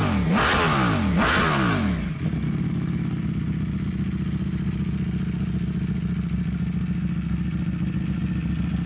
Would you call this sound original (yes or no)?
yes